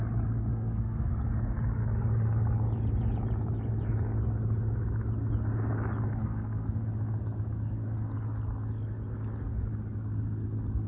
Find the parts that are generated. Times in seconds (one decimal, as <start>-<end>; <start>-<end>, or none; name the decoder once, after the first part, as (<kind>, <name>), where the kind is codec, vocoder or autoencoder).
0.5-1.1 (codec, SNAC); 6.1-6.8